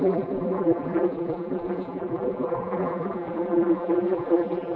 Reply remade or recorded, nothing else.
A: remade